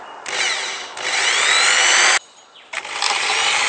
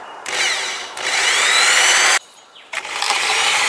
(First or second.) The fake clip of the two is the second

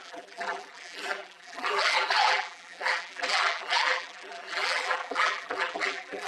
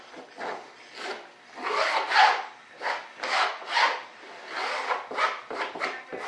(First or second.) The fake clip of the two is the first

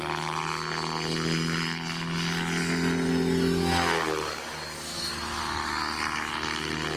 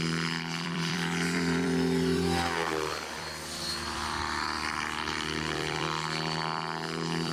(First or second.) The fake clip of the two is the second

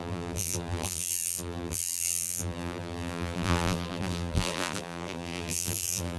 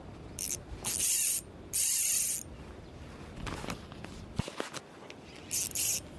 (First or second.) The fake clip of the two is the first